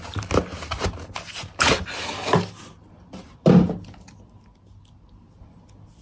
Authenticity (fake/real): real